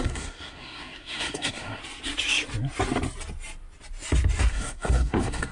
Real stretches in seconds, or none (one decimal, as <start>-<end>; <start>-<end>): 1.8-4.5